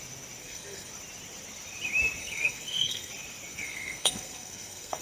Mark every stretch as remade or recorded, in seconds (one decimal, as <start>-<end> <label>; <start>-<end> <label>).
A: 0.0-0.4 recorded; 0.4-0.9 remade; 0.9-2.2 recorded; 2.2-3.1 remade; 3.1-3.5 recorded; 3.5-5.0 remade